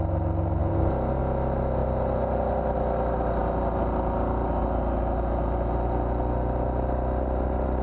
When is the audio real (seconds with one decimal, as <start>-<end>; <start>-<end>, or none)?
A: 0.0-7.8